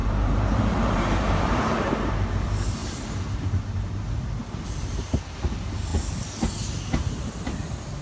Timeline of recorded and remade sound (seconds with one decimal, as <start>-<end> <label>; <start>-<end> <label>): 0.0-2.1 remade; 2.1-2.8 recorded; 2.8-3.6 remade; 3.6-8.0 recorded